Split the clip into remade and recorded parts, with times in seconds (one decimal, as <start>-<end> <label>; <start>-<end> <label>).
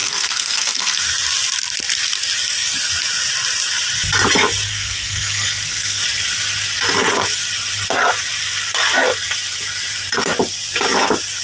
0.0-1.0 remade; 1.0-4.7 recorded; 4.7-6.0 remade; 6.0-11.4 recorded